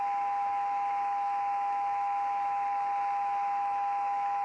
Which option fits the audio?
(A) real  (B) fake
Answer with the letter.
B